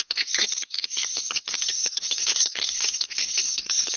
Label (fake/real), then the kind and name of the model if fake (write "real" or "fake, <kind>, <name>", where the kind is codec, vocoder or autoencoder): fake, codec, SNAC